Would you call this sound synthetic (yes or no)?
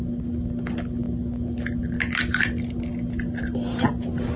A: no